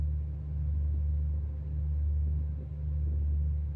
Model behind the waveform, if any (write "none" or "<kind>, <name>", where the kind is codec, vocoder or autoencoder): none